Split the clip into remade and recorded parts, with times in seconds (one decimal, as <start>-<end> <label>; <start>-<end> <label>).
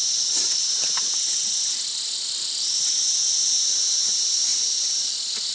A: 0.0-5.5 recorded